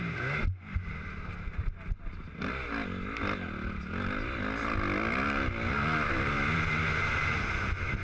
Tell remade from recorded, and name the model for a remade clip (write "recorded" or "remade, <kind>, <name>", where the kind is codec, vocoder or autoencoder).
recorded